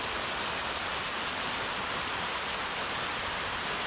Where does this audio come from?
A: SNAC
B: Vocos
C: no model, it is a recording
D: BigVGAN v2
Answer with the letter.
C